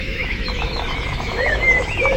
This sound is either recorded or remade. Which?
remade